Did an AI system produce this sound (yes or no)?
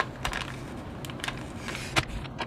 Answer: no